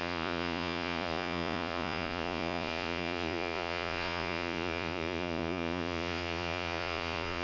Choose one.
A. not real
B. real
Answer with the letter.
A